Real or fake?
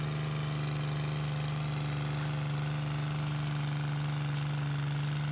real